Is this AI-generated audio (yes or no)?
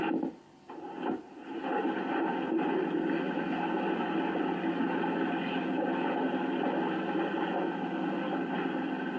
no